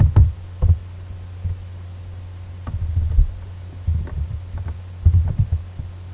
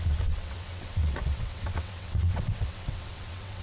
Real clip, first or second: first